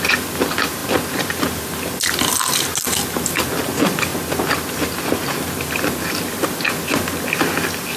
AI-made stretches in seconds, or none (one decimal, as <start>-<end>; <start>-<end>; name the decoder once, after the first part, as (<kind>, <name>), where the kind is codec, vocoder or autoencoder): none